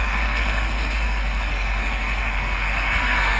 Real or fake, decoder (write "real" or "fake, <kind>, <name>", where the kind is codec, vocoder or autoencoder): fake, codec, SNAC